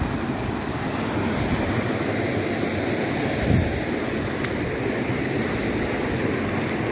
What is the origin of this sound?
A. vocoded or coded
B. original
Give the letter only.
B